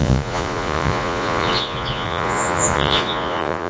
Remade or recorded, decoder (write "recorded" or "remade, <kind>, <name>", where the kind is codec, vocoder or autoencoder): remade, vocoder, Vocos